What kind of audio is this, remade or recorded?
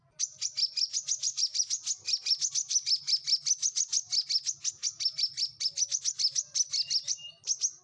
recorded